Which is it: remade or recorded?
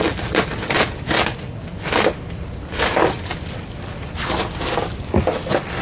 recorded